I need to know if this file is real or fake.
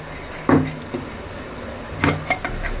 real